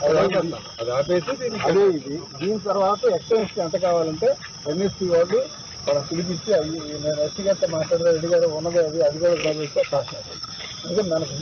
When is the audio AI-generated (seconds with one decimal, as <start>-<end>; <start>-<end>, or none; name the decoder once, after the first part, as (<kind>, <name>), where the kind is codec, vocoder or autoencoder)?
9.4-10.6 (codec, SNAC)